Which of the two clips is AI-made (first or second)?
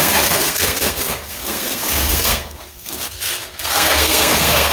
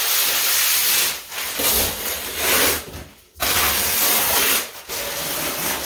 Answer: first